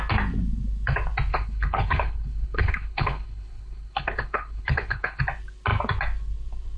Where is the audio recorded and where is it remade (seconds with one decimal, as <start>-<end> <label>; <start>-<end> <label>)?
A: 0.0-1.3 recorded; 1.3-5.2 remade; 5.2-6.8 recorded